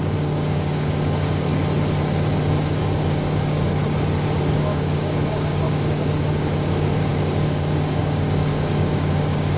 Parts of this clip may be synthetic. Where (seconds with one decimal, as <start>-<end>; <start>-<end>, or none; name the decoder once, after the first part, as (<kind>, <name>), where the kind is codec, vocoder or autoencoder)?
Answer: 0.0-1.5 (codec, DAC); 2.6-3.8; 4.5-9.6